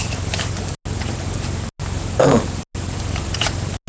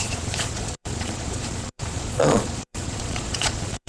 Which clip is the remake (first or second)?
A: second